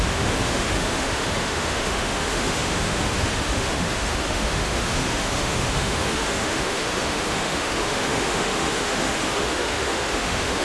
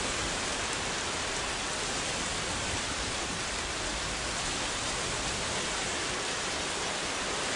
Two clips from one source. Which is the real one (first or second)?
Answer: second